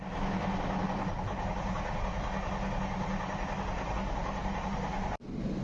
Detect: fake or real real